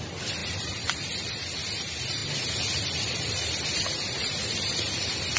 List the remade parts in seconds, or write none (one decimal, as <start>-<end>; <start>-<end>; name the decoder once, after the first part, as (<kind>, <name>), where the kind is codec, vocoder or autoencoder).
0.4-1.7 (vocoder, BigVGAN v2); 2.2-5.4

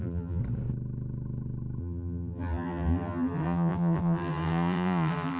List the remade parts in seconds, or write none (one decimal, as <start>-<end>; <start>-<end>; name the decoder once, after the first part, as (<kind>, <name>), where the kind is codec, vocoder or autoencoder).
0.0-0.4 (vocoder, BigVGAN v2); 1.8-5.4

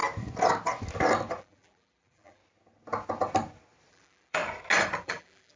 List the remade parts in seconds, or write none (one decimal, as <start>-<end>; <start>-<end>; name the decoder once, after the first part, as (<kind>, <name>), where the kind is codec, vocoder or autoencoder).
1.4-2.4 (vocoder, BigVGAN v2); 3.9-4.4; 5.0-5.6

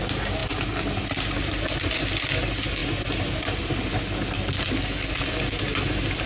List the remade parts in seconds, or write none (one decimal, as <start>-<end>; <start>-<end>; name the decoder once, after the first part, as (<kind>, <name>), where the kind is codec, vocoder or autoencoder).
none

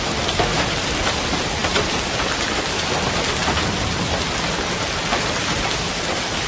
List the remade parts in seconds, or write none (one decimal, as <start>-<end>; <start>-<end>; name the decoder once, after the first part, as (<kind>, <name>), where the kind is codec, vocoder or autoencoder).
none

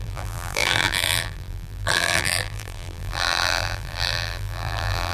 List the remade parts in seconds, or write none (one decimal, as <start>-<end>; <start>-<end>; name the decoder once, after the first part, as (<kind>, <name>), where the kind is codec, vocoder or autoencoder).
0.0-5.1 (vocoder, BigVGAN v2)

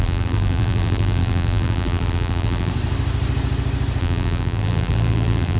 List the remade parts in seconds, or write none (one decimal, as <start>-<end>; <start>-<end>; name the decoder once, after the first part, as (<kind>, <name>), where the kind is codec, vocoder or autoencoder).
0.0-2.7 (vocoder, BigVGAN v2); 4.0-5.6

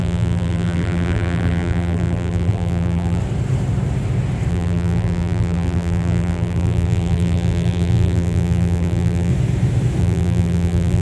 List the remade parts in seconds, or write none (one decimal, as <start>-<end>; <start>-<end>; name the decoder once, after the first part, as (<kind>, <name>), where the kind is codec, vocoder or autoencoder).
0.0-3.2 (vocoder, BigVGAN v2); 4.5-9.3; 10.0-11.0